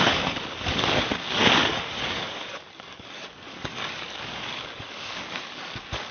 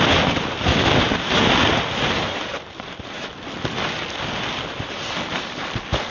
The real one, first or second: second